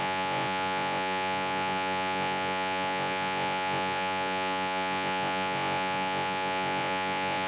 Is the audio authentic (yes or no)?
no